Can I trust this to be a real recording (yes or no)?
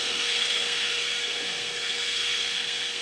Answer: no